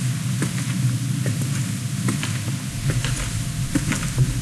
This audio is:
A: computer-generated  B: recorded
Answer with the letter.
B